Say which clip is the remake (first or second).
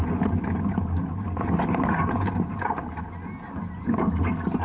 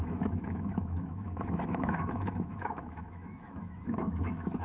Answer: second